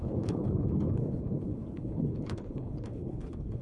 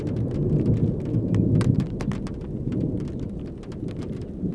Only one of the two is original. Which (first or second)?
second